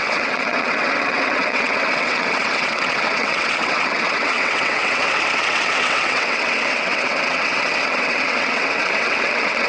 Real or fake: fake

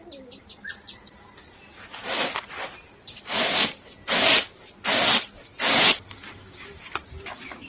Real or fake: real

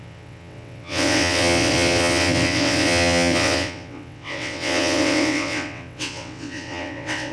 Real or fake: fake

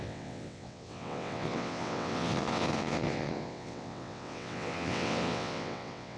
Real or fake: fake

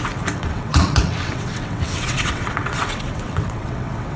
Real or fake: fake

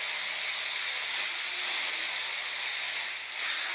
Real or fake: real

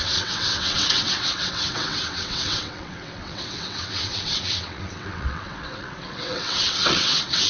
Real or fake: fake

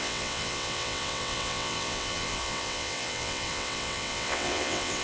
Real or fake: fake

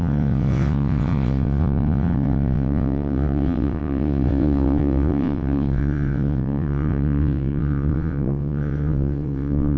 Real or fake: fake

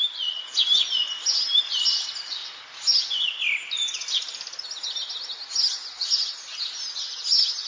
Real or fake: real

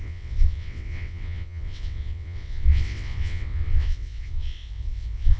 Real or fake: fake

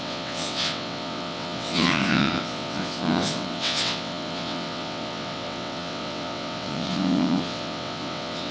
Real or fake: fake